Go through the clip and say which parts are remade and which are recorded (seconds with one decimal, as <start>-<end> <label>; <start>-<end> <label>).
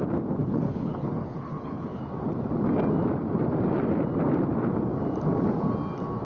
0.0-0.4 recorded; 0.4-2.0 remade; 2.0-6.2 recorded